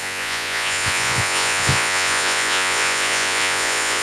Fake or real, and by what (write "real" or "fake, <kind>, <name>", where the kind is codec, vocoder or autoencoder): fake, vocoder, Vocos